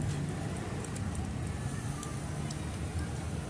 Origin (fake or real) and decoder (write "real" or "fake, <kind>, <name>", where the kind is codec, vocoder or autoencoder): real